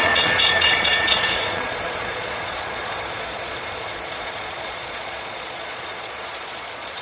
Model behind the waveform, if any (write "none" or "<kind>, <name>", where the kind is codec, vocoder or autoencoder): vocoder, Vocos